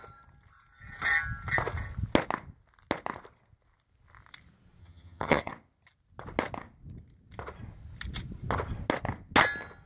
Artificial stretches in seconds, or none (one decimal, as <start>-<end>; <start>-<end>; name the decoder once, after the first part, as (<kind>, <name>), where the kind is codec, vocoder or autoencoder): 4.8-5.5 (vocoder, HiFi-GAN)